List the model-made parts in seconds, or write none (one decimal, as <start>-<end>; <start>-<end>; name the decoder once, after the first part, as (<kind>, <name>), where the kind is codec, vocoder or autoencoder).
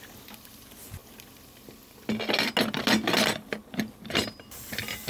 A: none